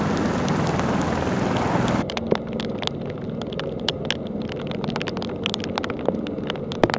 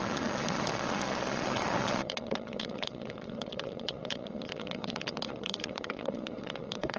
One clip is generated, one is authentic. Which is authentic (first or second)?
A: first